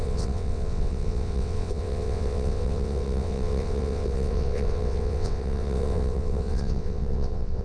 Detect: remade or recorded remade